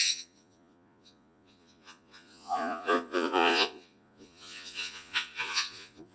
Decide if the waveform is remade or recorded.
remade